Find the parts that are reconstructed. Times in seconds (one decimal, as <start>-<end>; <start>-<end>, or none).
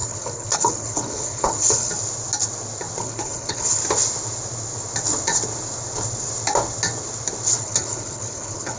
0.0-1.9; 3.0-3.8; 7.6-8.8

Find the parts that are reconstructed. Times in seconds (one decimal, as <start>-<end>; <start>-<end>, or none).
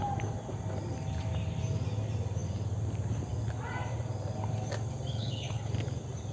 5.1-5.7